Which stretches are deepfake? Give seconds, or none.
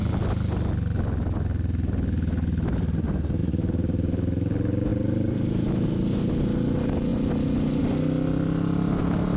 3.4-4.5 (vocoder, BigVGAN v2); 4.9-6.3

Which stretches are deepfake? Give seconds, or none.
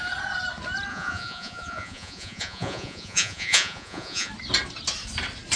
0.9-4.3 (vocoder, Vocos)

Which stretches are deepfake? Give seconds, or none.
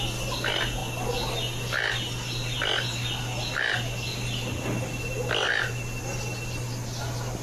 none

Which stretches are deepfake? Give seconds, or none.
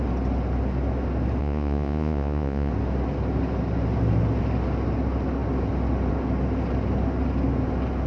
1.4-2.7 (vocoder, Vocos)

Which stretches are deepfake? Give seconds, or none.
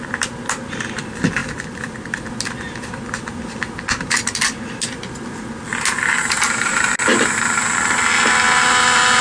none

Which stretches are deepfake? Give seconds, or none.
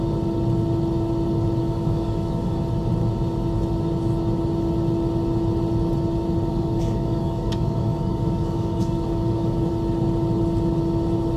1.6-2.6 (codec, DAC); 6.5-9.7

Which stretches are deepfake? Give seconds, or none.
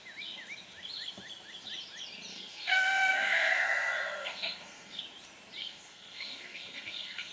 2.3-5.0 (codec, SNAC); 5.6-7.3